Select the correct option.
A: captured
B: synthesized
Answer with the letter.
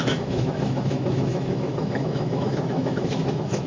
B